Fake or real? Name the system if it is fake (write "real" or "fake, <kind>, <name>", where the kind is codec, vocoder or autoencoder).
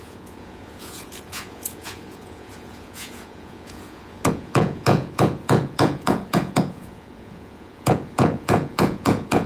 fake, vocoder, Vocos